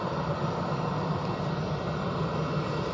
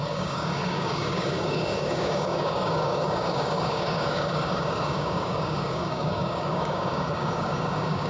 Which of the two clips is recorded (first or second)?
first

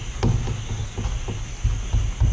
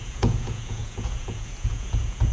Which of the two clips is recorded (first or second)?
first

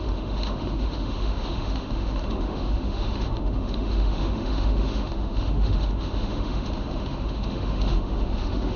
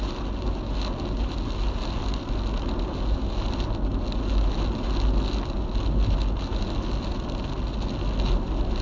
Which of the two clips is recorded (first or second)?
second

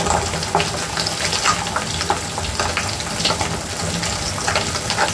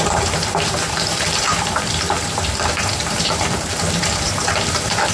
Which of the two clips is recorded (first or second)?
first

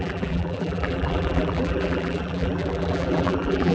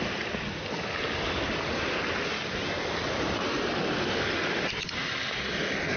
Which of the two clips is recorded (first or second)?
second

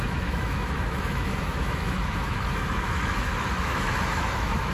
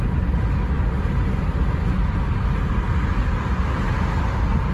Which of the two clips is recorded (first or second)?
second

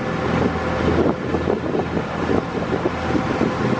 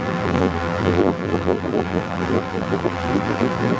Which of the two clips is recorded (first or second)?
first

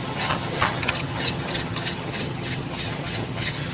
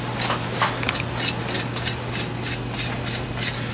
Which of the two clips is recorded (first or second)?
second